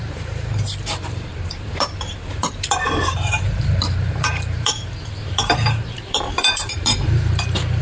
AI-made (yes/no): yes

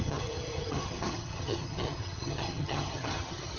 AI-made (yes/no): yes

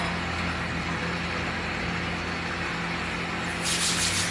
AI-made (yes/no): no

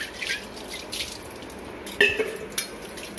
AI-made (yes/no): no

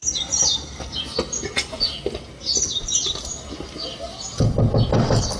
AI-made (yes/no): no